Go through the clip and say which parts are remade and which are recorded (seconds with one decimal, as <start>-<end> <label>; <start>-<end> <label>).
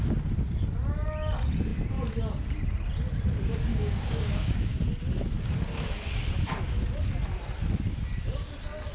0.0-3.7 recorded; 3.7-4.8 remade; 4.8-8.9 recorded